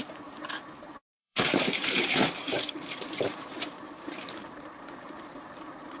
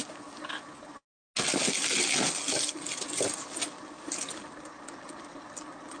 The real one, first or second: second